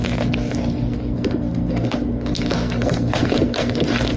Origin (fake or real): fake